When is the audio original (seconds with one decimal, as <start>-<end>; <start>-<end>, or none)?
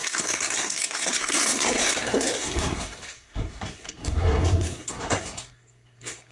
none